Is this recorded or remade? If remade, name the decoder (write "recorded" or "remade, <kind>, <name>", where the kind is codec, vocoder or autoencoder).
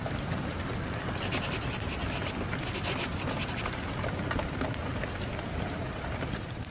recorded